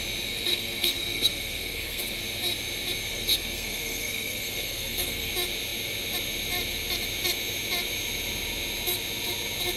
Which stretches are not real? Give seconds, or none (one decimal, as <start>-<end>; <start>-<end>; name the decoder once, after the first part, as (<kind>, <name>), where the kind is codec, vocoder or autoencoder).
0.5-2.0 (codec, SNAC); 3.1-5.3